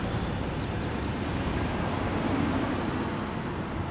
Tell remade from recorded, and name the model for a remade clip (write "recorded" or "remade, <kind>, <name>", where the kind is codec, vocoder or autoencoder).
recorded